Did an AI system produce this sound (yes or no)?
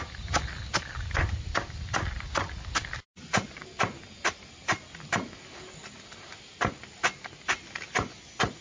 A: no